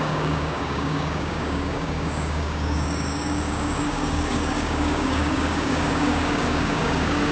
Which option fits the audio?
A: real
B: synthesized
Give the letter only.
B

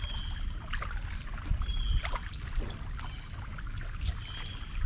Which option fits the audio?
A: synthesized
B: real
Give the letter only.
B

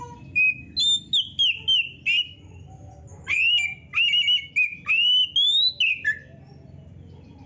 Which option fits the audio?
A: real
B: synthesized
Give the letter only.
A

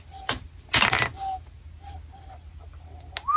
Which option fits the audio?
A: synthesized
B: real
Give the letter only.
B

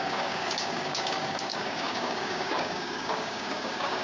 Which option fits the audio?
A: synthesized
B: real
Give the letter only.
A